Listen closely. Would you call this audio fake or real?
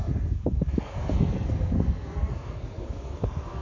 fake